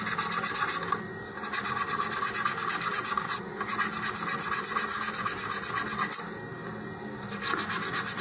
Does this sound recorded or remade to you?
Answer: recorded